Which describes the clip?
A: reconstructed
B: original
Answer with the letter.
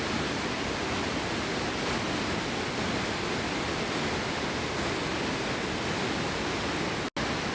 B